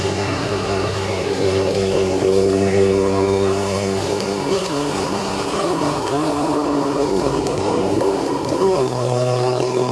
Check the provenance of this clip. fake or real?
fake